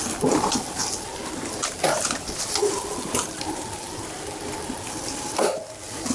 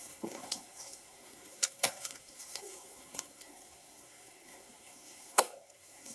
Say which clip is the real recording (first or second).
first